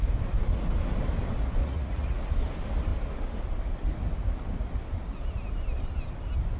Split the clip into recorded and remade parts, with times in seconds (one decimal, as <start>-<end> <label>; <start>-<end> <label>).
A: 0.0-1.6 recorded; 1.6-2.2 remade; 2.2-6.6 recorded